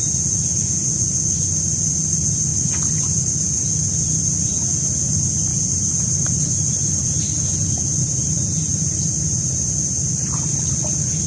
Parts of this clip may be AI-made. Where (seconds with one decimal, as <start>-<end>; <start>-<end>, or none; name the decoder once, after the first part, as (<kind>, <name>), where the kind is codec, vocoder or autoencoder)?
5.5-10.1 (vocoder, BigVGAN v2)